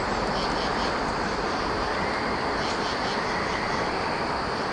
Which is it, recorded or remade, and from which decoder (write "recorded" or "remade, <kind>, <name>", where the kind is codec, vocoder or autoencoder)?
recorded